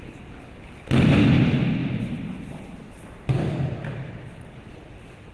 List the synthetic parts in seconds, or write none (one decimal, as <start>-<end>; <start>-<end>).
none